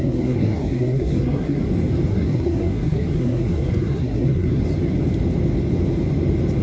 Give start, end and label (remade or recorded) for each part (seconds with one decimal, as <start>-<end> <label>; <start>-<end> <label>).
0.0-1.6 remade; 1.6-2.1 recorded; 2.1-4.6 remade; 4.6-6.6 recorded